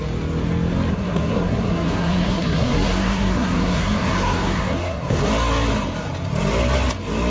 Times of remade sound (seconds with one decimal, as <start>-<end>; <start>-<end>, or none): 0.9-5.3